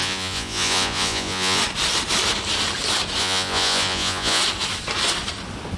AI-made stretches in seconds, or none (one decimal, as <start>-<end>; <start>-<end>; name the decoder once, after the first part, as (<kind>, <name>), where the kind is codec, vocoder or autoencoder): 0.0-1.6 (vocoder, Vocos); 3.2-4.4